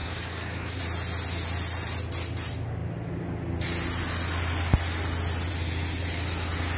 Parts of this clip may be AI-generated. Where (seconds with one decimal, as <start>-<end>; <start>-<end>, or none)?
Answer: 0.0-0.8